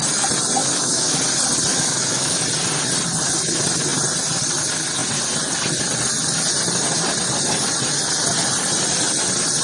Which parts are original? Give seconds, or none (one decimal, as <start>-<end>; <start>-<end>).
0.0-0.6; 1.2-1.7; 2.4-9.6